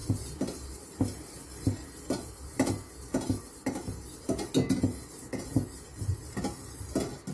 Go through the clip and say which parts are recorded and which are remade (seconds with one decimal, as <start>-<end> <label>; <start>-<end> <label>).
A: 0.0-7.3 recorded